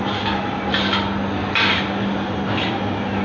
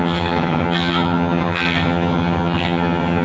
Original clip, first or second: first